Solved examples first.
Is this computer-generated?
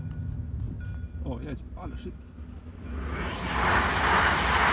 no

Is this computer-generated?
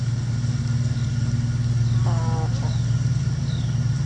no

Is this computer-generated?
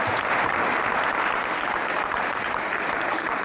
yes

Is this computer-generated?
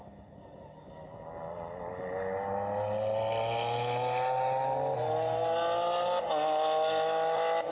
no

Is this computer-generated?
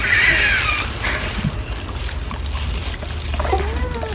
no